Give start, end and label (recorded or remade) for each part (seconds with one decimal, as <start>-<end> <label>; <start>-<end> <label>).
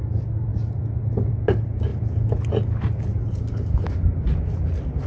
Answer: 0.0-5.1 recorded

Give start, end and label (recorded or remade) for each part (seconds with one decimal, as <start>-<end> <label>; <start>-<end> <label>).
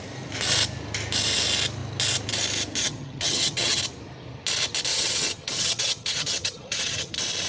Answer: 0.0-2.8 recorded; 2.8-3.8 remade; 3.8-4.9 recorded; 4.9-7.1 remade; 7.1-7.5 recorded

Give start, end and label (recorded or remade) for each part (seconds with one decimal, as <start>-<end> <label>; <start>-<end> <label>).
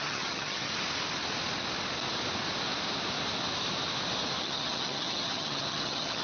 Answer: 0.0-0.7 remade; 0.7-4.4 recorded; 4.4-6.2 remade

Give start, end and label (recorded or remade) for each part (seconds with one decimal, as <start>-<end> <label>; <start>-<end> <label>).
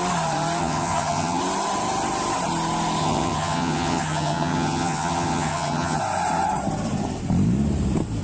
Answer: 0.0-0.6 recorded; 0.6-1.4 remade; 1.4-3.0 recorded; 3.0-6.0 remade; 6.0-8.2 recorded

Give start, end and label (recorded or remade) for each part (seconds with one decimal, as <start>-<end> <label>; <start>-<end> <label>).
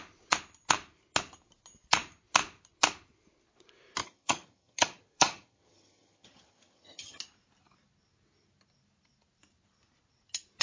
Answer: 0.0-4.0 recorded; 4.0-7.2 remade; 7.2-10.6 recorded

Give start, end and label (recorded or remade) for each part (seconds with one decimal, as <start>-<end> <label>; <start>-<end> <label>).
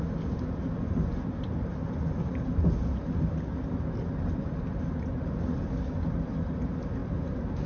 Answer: 0.0-7.7 recorded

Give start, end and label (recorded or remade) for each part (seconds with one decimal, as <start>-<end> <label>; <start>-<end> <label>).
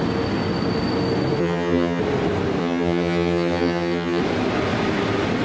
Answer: 0.0-1.4 recorded; 1.4-2.0 remade; 2.0-2.6 recorded; 2.6-4.2 remade; 4.2-5.4 recorded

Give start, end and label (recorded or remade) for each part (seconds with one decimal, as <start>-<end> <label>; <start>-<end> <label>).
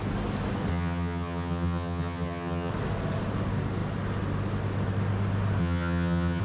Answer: 0.0-0.7 recorded; 0.7-2.7 remade; 2.7-5.6 recorded; 5.6-6.4 remade